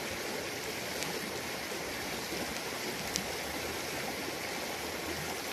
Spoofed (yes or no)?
no